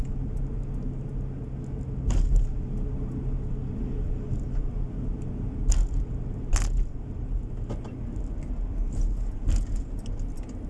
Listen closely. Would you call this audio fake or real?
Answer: real